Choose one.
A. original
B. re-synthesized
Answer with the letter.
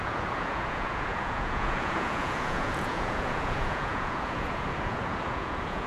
B